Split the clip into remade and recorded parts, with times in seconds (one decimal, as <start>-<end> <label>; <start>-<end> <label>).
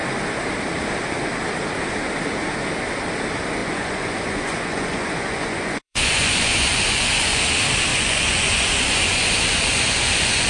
0.0-3.6 recorded; 3.6-7.4 remade; 7.4-7.9 recorded; 7.9-10.5 remade